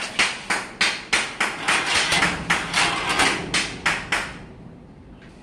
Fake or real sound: real